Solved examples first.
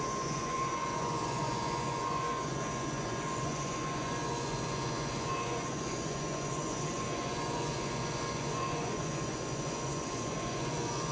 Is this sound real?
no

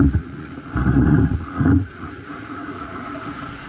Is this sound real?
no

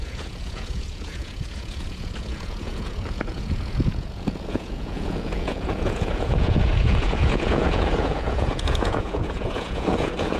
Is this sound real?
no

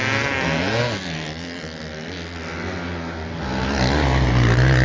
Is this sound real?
yes